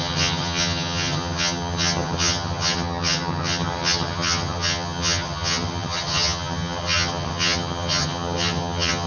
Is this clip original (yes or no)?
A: no